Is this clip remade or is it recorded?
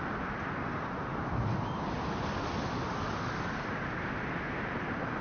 recorded